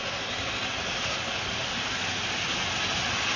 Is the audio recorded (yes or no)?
yes